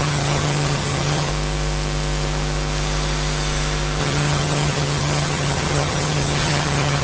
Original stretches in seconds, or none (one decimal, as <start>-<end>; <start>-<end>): 1.3-4.0